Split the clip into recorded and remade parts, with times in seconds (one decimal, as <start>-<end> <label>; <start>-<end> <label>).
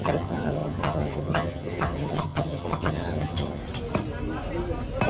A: 0.0-3.6 remade; 3.6-5.1 recorded